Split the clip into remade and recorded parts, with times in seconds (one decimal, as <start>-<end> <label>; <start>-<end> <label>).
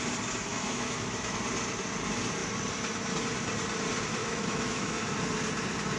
0.0-0.5 recorded; 0.5-1.4 remade; 1.4-4.2 recorded; 4.2-5.0 remade; 5.0-6.0 recorded